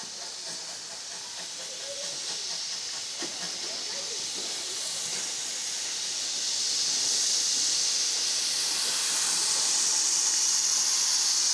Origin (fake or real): real